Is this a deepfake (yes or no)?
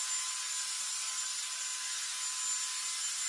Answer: no